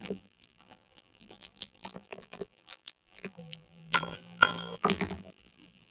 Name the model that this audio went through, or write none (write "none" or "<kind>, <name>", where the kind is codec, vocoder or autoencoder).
vocoder, BigVGAN v2